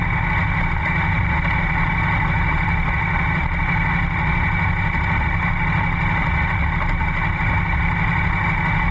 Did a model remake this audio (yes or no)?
no